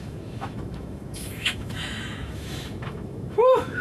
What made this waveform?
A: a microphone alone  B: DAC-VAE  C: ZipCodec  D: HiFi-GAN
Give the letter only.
B